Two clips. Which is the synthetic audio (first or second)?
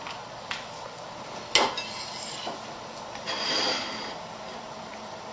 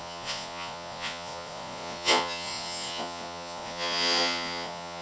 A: second